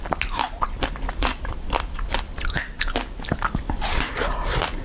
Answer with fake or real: real